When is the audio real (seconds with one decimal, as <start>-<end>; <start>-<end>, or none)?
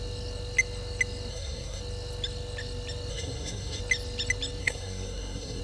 0.0-1.3; 1.8-3.1; 3.8-4.6